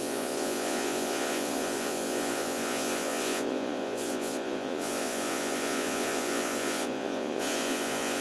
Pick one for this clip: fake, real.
fake